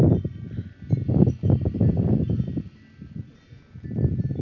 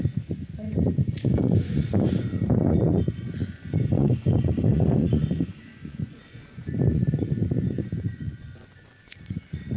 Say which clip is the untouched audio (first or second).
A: first